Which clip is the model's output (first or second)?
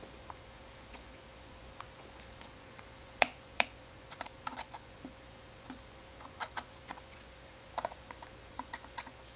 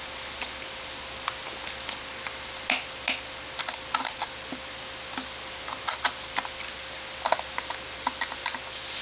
first